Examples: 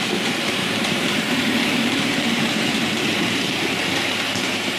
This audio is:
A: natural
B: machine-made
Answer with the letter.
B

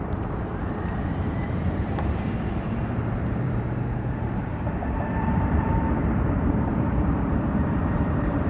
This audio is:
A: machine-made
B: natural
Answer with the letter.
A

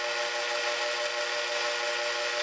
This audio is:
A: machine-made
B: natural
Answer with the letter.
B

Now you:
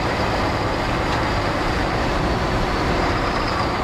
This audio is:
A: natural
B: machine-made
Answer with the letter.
B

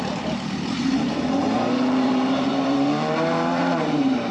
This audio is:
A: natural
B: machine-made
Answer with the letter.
B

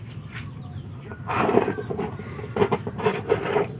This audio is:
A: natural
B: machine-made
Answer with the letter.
B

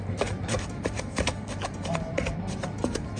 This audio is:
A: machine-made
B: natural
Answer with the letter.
A